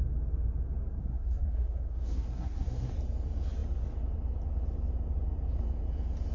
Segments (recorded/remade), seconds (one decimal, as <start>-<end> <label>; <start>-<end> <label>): 0.0-1.0 recorded; 1.0-2.9 remade; 2.9-6.3 recorded